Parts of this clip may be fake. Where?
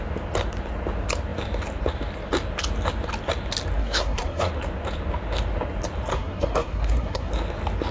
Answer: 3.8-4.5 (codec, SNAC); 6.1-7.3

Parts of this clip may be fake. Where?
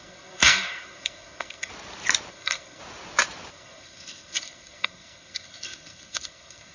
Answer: 0.0-1.7 (codec, SNAC); 2.3-2.8; 3.5-6.7